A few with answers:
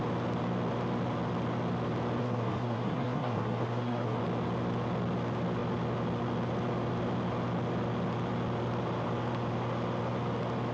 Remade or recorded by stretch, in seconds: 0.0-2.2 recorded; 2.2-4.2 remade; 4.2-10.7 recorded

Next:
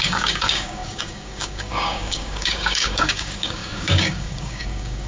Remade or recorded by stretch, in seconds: 0.0-5.1 remade